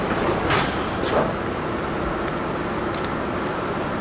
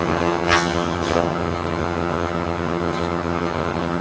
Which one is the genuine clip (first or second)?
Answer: first